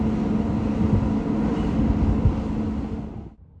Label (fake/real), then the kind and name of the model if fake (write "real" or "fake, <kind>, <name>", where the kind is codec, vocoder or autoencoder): real